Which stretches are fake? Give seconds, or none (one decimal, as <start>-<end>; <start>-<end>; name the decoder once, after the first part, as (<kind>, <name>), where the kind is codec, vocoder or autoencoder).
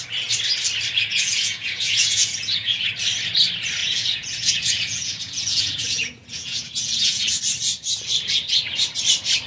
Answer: 1.1-2.9 (vocoder, Vocos); 3.8-7.4